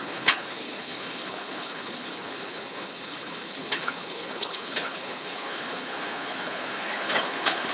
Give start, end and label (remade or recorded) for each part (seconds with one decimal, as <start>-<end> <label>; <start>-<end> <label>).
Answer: 0.0-7.7 remade